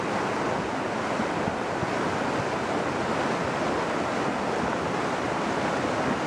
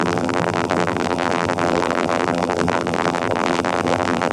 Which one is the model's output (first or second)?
second